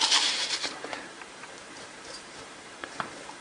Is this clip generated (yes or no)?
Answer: yes